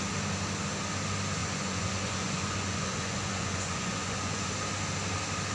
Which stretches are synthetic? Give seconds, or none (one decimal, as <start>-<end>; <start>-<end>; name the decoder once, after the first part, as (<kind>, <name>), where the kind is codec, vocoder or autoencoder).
1.4-4.5 (vocoder, Vocos)